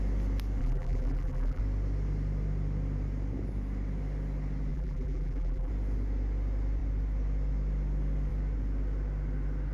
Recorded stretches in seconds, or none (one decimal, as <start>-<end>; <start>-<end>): 0.0-0.6; 1.6-4.7; 5.7-9.7